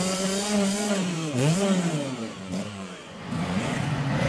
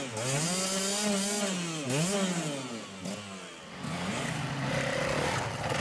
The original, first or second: second